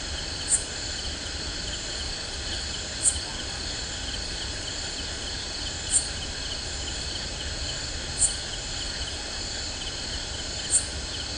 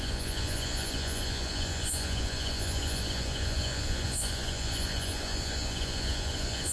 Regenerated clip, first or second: second